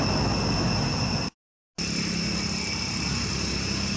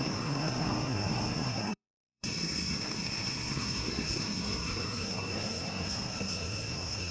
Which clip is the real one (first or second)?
first